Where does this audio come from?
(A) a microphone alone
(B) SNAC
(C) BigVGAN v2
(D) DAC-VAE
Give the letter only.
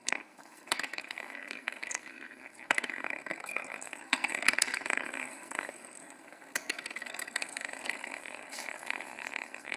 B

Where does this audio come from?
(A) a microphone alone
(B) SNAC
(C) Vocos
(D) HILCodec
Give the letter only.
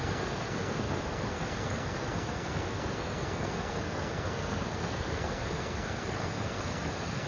B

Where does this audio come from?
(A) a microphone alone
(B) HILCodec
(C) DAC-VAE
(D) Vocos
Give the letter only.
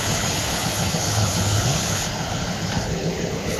B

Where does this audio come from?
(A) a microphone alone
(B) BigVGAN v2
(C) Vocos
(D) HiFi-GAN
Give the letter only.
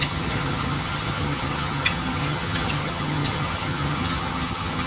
D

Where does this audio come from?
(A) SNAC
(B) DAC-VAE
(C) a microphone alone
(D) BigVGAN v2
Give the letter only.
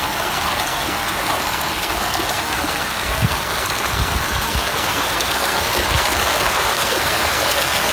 A